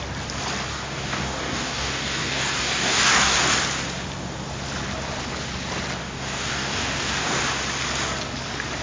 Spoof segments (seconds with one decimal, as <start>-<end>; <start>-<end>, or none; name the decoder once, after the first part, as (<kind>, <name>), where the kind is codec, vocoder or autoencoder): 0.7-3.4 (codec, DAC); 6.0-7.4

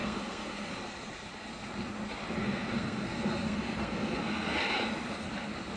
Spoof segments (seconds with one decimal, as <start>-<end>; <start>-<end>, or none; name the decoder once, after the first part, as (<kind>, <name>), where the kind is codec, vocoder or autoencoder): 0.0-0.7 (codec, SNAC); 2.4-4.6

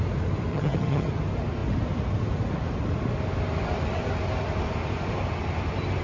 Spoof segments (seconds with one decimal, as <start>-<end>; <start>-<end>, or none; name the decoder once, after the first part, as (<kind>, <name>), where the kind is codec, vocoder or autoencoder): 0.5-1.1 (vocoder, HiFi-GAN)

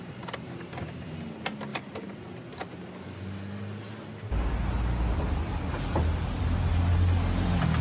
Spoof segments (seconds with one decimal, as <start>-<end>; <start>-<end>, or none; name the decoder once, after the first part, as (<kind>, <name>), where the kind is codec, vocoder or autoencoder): none

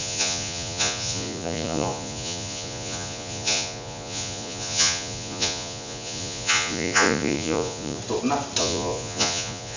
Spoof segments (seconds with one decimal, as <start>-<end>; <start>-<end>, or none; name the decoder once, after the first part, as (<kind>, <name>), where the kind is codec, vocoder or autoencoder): 0.0-8.0 (vocoder, Vocos); 8.6-9.8

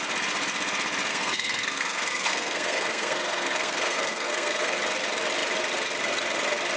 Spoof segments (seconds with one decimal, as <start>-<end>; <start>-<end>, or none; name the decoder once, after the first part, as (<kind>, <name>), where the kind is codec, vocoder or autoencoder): 1.1-4.8 (codec, SNAC)